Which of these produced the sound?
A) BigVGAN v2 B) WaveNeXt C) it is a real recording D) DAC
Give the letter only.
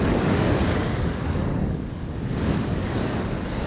D